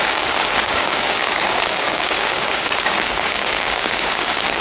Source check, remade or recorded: remade